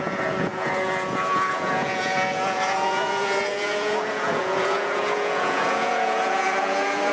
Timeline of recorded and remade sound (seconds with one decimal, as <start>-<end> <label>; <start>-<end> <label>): 0.0-7.1 remade

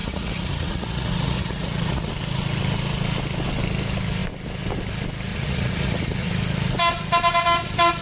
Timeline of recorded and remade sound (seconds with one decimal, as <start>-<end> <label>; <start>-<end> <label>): 0.0-2.1 remade; 2.1-5.3 recorded; 5.3-6.3 remade; 6.3-8.0 recorded

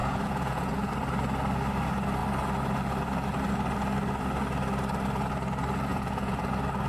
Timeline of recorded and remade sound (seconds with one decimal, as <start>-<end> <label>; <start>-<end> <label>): 0.0-0.9 remade; 0.9-5.9 recorded; 5.9-6.5 remade; 6.5-6.9 recorded

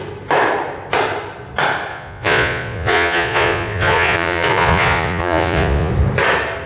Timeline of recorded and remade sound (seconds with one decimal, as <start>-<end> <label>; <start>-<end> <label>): 0.0-1.9 recorded; 1.9-5.9 remade; 5.9-6.7 recorded

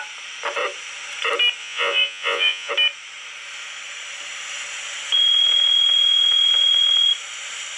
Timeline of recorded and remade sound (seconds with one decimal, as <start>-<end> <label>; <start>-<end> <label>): 0.0-1.6 recorded; 1.6-2.7 remade; 2.7-7.8 recorded